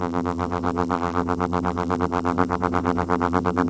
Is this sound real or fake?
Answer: fake